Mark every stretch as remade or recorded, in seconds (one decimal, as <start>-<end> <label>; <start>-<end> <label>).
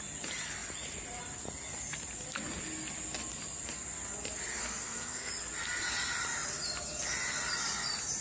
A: 0.0-4.6 recorded; 4.6-5.3 remade; 5.3-8.2 recorded